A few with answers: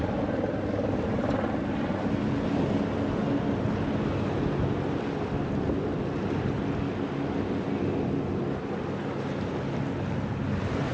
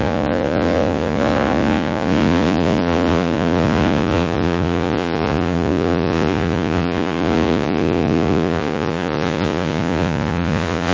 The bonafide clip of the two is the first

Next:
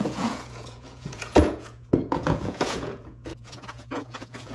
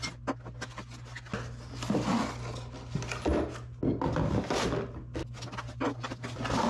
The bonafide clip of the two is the second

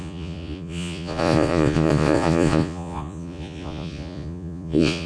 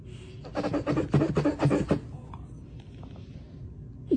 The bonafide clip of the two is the second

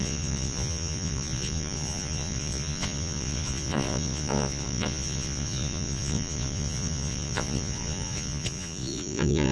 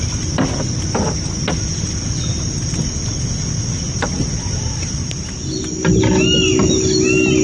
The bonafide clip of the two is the second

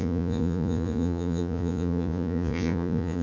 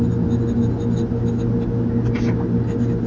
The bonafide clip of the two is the second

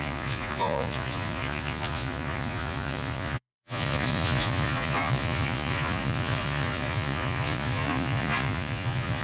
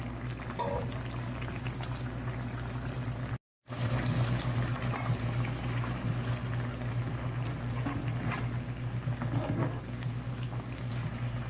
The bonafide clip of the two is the second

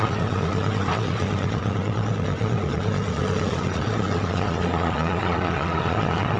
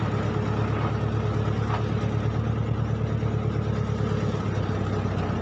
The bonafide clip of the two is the second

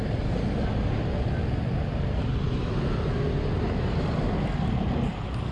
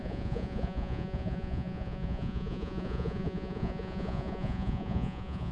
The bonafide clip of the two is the first